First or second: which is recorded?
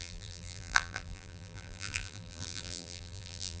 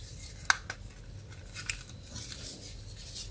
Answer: second